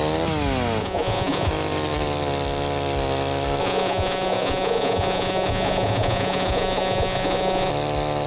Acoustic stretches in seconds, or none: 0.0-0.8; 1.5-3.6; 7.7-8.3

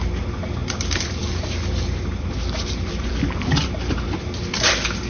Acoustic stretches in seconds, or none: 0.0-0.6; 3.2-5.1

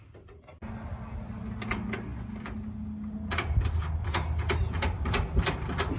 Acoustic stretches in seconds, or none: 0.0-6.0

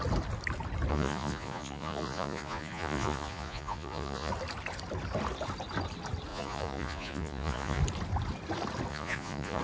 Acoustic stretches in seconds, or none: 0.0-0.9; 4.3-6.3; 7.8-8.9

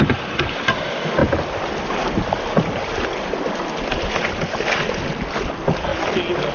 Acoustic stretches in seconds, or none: 0.0-6.5